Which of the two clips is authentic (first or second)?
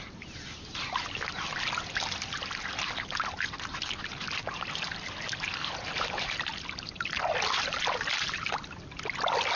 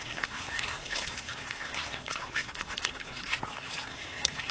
first